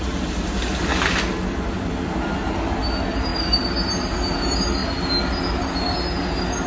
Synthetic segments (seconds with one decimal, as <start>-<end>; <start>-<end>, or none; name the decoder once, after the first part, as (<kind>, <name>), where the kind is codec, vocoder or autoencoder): none